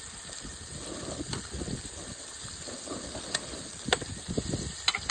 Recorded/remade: recorded